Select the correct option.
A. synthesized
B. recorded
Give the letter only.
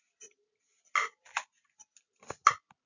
B